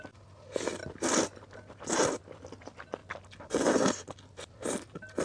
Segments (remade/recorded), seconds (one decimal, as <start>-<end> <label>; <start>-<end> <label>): 0.0-5.2 recorded